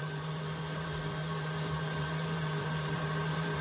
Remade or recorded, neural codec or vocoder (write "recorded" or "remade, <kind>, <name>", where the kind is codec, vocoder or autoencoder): remade, vocoder, BigVGAN v2